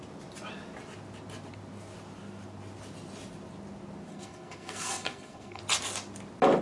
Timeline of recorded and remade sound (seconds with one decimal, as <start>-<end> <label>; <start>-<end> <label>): 0.0-4.1 recorded; 4.1-5.6 remade; 5.6-6.6 recorded